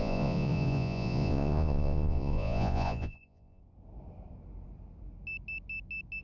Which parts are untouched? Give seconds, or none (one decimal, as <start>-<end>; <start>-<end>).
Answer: 3.6-6.2